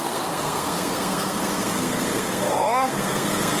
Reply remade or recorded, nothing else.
remade